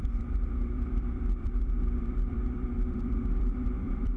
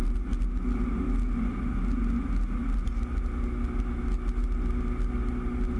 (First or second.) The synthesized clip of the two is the first